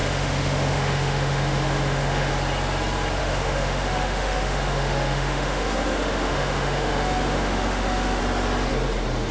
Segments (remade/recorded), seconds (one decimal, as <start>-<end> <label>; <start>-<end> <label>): 0.0-2.3 remade; 2.3-3.2 recorded; 3.2-8.2 remade; 8.2-9.3 recorded